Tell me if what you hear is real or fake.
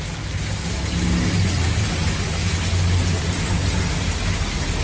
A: real